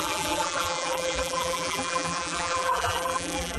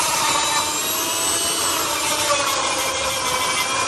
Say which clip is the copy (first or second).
first